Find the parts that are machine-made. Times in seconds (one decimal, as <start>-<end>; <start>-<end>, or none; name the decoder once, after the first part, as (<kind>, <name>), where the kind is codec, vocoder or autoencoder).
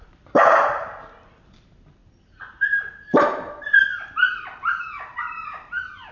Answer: 0.0-6.1 (vocoder, BigVGAN v2)